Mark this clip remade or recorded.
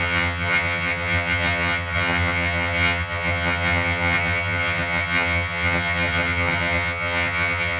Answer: remade